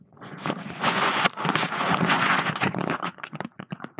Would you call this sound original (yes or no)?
no